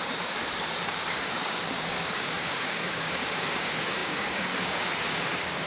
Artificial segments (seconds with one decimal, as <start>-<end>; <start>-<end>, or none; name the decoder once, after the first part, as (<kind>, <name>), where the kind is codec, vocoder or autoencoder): 0.0-0.4 (codec, DAC); 0.9-5.7